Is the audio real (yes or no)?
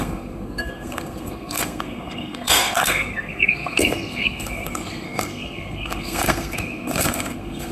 no